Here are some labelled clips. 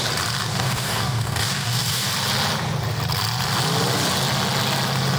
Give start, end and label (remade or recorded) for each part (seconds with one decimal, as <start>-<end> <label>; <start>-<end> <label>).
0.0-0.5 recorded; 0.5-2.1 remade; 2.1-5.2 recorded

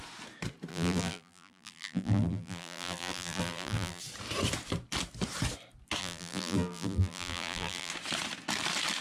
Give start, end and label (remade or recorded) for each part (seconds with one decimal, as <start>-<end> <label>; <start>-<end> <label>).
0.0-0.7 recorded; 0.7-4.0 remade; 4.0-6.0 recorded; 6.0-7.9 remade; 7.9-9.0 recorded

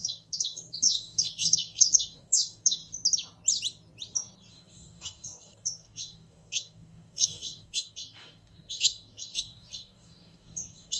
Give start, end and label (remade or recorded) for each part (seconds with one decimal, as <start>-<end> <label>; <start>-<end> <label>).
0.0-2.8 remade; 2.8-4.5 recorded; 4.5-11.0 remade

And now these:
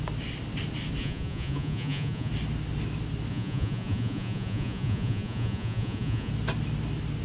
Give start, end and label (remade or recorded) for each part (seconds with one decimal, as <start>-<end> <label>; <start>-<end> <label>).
0.0-1.0 recorded; 1.0-2.3 remade; 2.3-3.3 recorded; 3.3-6.3 remade; 6.3-7.2 recorded

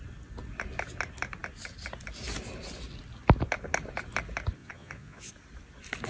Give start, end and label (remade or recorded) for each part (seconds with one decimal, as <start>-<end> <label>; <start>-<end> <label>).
0.0-4.6 recorded; 4.6-5.3 remade; 5.3-6.1 recorded

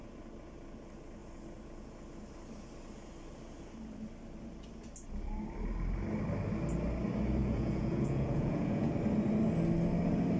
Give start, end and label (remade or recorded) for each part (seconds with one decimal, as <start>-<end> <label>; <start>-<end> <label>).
0.0-7.4 recorded; 7.4-8.9 remade; 8.9-10.4 recorded

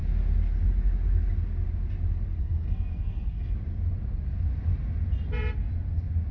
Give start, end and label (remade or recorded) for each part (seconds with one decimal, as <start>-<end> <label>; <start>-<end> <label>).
0.0-2.4 recorded; 2.4-3.5 remade; 3.5-6.3 recorded